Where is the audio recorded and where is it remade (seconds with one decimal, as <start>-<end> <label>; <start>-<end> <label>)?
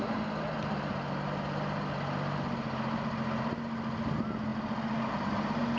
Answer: 0.0-4.5 recorded; 4.5-5.1 remade; 5.1-5.8 recorded